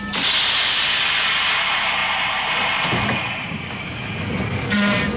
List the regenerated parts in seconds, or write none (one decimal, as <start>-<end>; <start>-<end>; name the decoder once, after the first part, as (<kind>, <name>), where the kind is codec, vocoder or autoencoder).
none

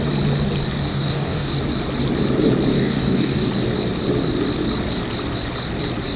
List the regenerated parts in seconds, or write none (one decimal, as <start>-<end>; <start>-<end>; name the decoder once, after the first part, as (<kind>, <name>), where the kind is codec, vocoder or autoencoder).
0.9-1.5 (codec, DAC); 2.7-3.5

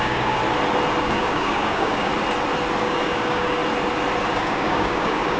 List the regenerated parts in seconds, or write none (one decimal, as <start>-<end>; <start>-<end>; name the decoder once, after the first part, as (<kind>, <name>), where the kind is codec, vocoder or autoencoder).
0.0-0.4 (codec, DAC); 1.0-2.1; 2.8-3.6; 4.3-5.4

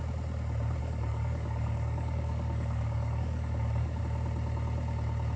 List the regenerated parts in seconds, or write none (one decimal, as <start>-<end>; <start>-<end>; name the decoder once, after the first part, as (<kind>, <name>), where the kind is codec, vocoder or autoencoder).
0.8-4.0 (codec, DAC)

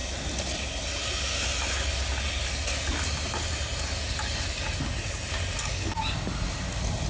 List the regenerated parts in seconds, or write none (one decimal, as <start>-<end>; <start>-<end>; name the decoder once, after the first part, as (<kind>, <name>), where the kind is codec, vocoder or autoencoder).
none

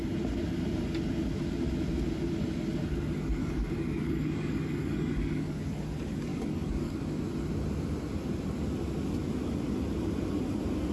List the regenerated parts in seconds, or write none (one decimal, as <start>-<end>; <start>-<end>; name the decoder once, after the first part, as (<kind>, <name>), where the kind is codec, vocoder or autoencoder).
3.4-5.6 (codec, DAC); 6.3-7.2

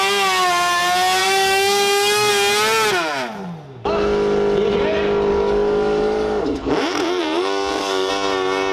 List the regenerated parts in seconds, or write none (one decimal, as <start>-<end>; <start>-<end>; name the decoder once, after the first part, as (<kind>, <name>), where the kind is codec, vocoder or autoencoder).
1.2-2.3 (codec, DAC); 5.3-8.1